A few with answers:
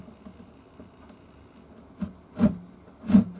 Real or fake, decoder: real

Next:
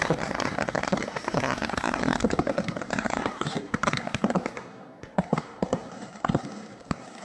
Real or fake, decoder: fake, codec, SNAC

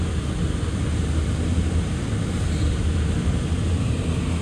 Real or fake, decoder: real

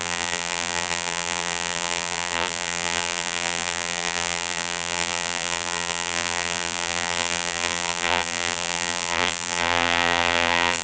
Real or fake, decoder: fake, vocoder, BigVGAN v2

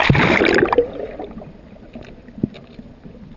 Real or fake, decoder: real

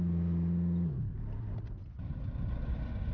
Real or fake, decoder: real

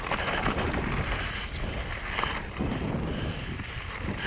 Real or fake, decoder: real